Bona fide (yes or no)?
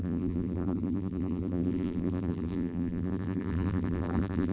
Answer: no